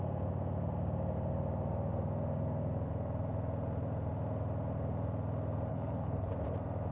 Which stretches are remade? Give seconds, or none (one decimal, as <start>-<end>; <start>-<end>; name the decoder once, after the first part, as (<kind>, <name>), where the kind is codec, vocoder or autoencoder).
5.7-6.3 (codec, HILCodec)